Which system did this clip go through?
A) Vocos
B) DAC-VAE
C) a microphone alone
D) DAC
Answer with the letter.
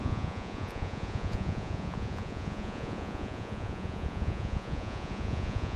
A